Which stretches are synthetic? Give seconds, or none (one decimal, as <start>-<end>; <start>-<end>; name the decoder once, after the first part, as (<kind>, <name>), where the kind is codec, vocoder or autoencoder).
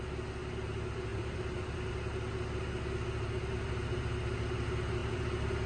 1.1-1.9 (vocoder, BigVGAN v2); 5.0-5.7